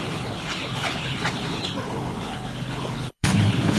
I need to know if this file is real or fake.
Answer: fake